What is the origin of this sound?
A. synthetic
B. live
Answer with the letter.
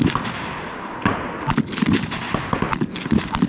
B